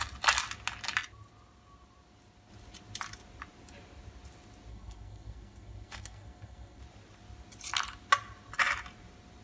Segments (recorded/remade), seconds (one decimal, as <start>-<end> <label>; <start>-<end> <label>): 0.0-4.7 recorded; 4.7-6.8 remade; 6.8-9.4 recorded